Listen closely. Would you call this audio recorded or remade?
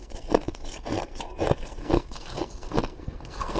remade